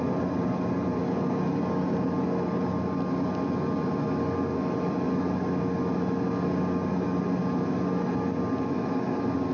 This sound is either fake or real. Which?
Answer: real